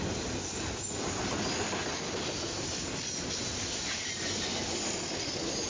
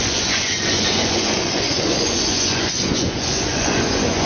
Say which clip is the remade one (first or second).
second